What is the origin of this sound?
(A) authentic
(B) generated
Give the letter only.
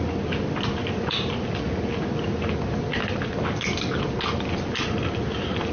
A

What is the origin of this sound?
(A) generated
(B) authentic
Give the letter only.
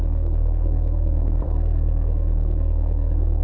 A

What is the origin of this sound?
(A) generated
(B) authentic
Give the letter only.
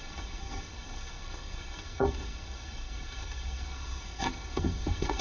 A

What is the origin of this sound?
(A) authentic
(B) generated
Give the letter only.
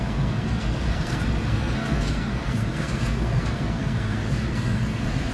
B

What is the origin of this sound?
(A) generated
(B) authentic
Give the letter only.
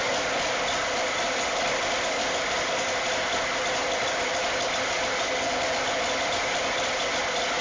B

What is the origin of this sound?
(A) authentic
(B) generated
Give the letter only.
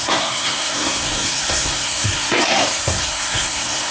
B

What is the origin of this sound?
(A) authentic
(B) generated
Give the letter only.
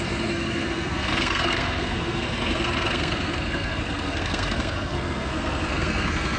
B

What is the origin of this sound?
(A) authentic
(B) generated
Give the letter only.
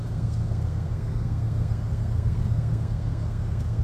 B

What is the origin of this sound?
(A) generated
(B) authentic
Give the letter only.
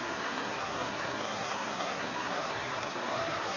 A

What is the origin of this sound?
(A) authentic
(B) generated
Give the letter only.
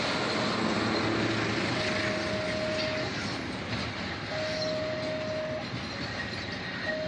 A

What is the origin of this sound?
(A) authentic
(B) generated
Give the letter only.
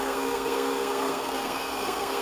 B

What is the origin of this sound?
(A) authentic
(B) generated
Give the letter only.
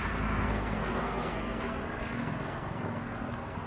B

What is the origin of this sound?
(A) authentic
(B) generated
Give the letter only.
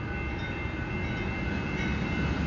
A